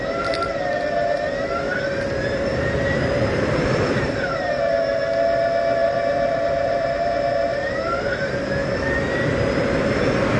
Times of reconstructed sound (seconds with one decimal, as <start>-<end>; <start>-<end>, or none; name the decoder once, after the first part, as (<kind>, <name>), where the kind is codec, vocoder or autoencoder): 2.5-4.7 (vocoder, BigVGAN v2); 5.8-8.3